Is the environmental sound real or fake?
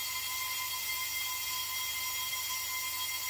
real